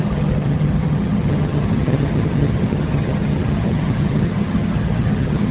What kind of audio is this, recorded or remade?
remade